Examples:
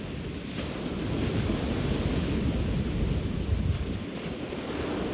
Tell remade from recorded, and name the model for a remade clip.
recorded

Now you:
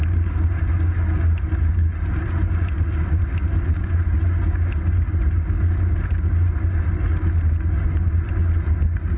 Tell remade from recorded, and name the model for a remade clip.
recorded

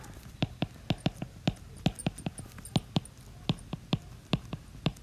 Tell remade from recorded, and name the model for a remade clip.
recorded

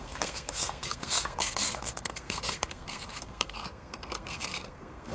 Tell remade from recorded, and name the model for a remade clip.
remade, codec, SNAC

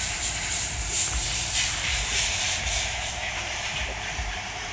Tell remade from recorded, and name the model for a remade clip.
remade, vocoder, BigVGAN v2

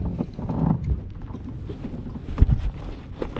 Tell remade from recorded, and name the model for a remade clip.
recorded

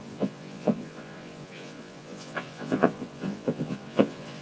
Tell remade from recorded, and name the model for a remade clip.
remade, vocoder, Vocos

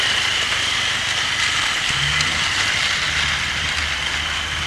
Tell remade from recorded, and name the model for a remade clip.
recorded